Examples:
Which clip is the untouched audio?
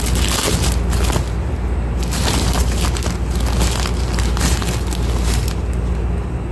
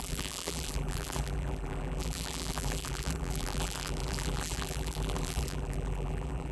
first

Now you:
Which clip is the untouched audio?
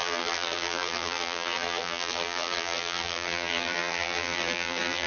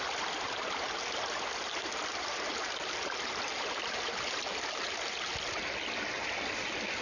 second